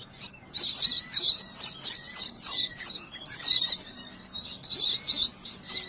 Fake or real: real